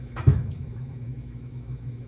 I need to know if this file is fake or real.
fake